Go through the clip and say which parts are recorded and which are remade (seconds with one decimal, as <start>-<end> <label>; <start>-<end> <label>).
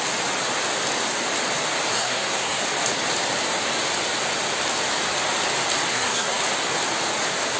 0.0-1.9 recorded; 1.9-2.6 remade; 2.6-5.9 recorded; 5.9-6.4 remade; 6.4-7.6 recorded